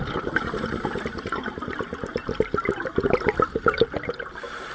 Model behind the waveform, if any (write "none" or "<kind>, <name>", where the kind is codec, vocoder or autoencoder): none